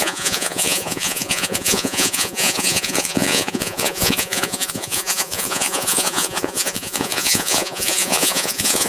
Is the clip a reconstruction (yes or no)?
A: yes